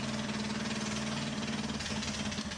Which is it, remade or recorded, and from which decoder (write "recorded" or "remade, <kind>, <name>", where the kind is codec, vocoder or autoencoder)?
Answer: recorded